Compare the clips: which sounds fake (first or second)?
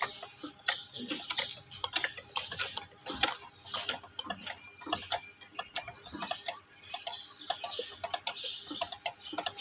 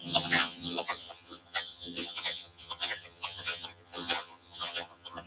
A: second